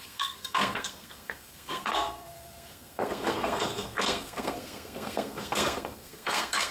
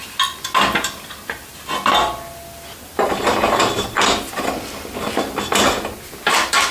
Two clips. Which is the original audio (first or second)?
second